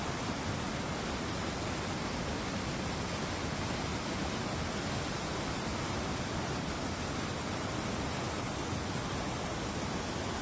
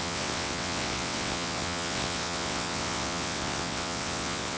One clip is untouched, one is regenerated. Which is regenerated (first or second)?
second